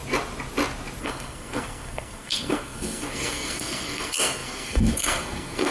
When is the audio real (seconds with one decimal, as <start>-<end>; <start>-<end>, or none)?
0.0-1.0